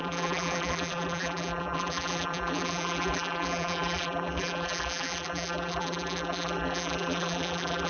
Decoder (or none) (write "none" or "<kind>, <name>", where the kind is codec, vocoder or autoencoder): vocoder, BigVGAN v2